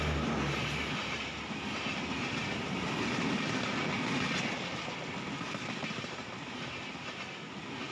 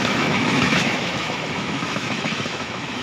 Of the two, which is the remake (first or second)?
second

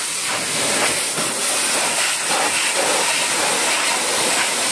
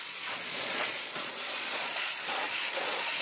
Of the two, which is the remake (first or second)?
second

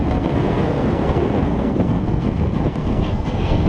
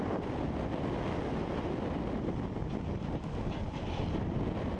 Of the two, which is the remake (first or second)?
first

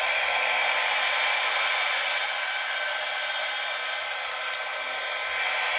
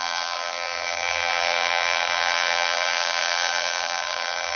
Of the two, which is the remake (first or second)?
second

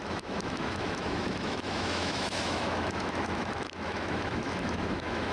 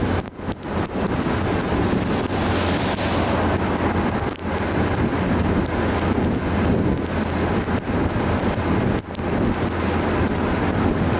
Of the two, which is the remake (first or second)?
first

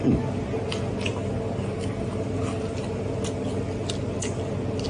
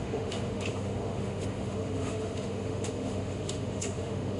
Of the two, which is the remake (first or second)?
second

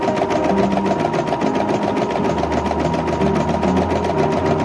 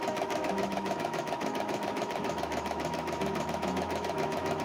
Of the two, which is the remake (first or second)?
second